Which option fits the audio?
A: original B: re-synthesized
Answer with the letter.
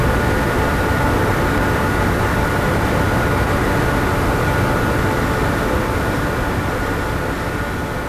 A